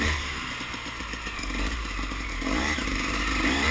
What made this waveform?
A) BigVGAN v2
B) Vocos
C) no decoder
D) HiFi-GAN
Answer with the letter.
A